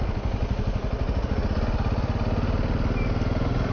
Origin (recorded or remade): recorded